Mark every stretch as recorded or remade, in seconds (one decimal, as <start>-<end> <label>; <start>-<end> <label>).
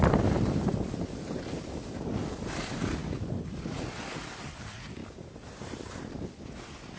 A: 0.0-7.0 recorded